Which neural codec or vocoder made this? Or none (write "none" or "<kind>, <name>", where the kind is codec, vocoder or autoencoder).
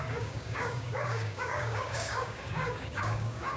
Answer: codec, DAC